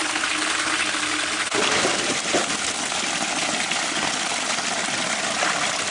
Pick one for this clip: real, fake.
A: real